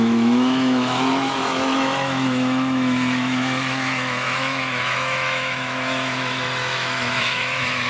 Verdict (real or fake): fake